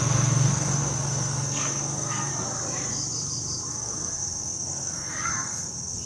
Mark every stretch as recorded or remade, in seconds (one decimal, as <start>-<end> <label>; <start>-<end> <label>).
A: 0.0-2.3 remade; 2.3-3.7 recorded; 3.7-6.1 remade

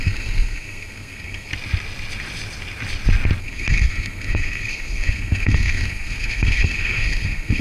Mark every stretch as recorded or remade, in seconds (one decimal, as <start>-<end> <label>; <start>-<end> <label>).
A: 0.0-1.5 remade; 1.5-3.4 recorded; 3.4-7.6 remade

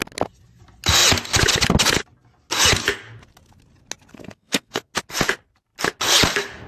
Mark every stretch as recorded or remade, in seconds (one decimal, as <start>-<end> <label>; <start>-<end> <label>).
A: 0.0-4.1 recorded; 4.1-4.9 remade; 4.9-6.7 recorded

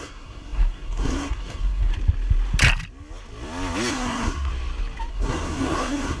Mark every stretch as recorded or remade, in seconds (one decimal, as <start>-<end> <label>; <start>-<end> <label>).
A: 0.0-1.9 remade; 1.9-3.9 recorded; 3.9-4.5 remade; 4.5-5.1 recorded; 5.1-6.2 remade

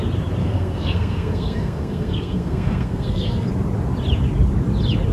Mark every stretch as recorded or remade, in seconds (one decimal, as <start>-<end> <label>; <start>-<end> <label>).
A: 0.0-0.4 recorded; 0.4-3.5 remade; 3.5-5.1 recorded